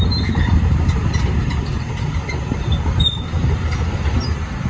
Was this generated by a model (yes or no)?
yes